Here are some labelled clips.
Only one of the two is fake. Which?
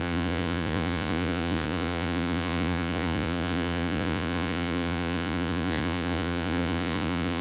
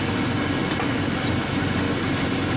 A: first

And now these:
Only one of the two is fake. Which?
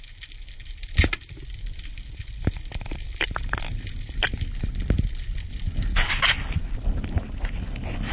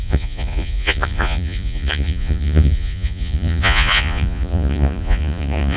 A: second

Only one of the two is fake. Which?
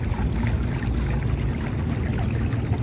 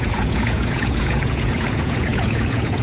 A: second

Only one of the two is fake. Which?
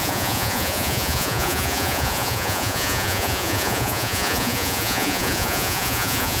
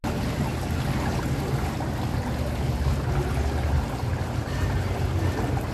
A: first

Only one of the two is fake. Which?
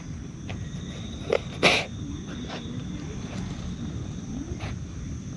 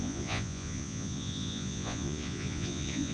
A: second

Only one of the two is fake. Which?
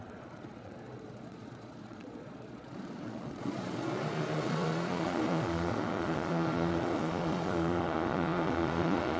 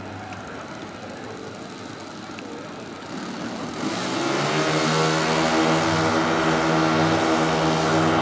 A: first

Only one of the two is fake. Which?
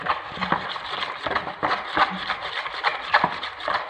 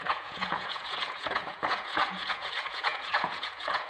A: second